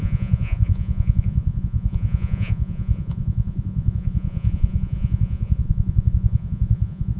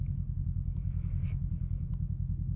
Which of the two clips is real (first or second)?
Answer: second